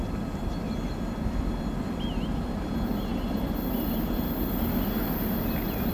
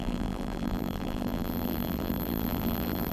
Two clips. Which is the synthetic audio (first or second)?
second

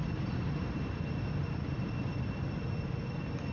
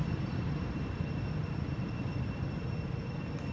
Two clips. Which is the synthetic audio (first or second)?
second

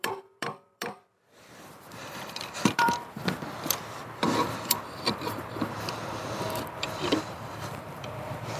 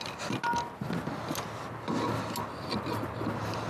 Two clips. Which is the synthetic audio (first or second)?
first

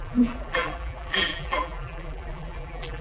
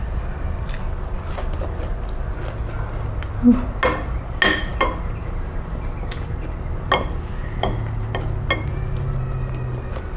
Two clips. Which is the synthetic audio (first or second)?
first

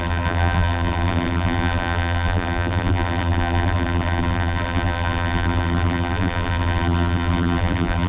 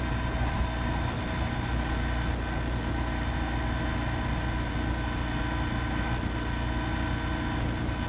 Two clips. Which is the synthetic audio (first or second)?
first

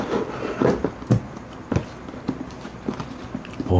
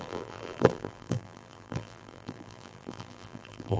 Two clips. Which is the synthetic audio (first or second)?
second